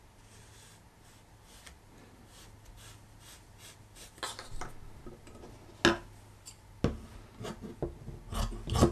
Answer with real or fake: real